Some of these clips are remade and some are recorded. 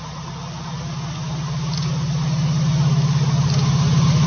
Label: recorded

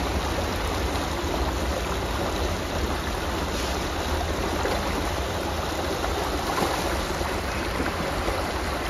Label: recorded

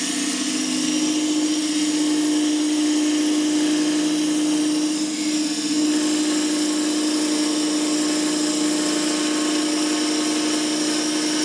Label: recorded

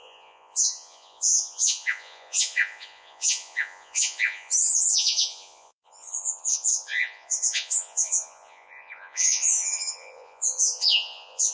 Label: remade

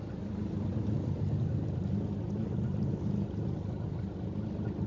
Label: recorded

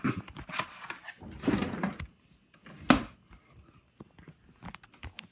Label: recorded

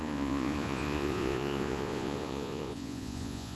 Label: remade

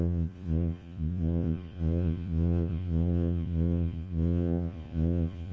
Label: remade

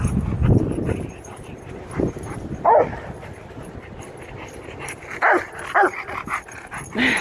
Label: recorded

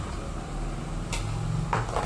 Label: recorded